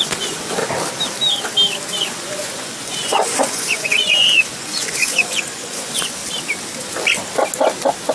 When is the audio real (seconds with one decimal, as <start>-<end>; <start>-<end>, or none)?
0.6-2.0; 6.2-8.1